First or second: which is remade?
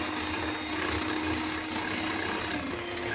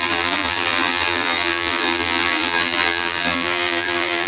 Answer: second